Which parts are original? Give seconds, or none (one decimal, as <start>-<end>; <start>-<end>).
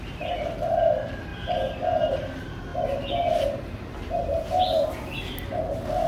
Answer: 0.0-6.1